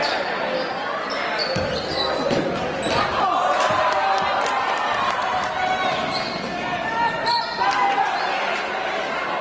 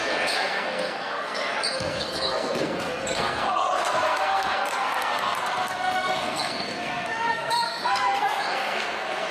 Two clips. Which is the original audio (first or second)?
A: first